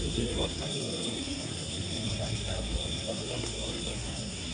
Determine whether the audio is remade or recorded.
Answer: remade